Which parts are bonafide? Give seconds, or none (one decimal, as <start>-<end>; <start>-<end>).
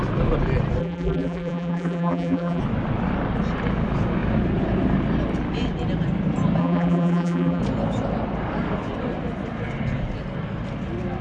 0.0-0.8; 2.6-6.6; 7.6-11.2